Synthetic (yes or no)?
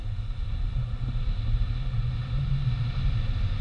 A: no